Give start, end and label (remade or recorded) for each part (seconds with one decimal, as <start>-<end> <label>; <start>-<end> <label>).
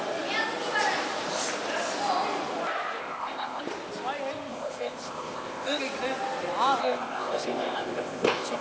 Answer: 0.0-3.0 recorded; 3.0-3.6 remade; 3.6-4.5 recorded; 4.5-5.8 remade; 5.8-6.8 recorded; 6.8-8.6 remade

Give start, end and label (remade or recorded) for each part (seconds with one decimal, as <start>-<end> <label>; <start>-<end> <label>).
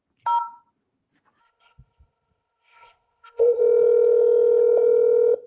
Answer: 0.0-1.4 recorded; 1.4-3.6 remade; 3.6-5.5 recorded